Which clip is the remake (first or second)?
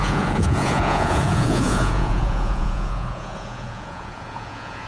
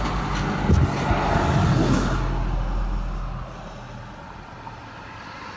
first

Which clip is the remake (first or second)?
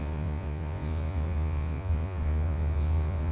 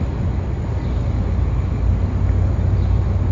first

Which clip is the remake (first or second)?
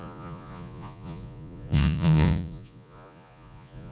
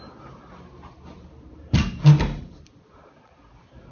first